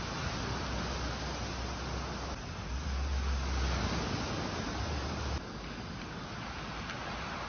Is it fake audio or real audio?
real